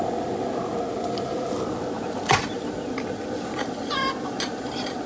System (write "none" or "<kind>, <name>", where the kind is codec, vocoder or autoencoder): none